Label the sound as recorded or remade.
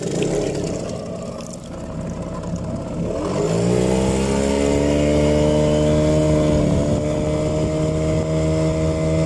recorded